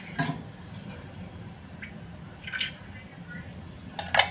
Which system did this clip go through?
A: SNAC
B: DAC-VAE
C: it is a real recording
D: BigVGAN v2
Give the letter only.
C